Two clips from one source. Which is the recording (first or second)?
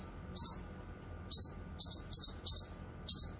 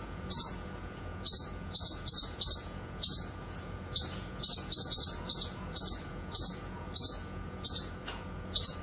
first